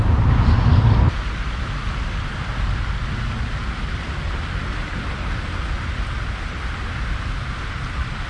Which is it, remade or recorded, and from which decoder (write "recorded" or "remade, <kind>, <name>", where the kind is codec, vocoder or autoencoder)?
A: recorded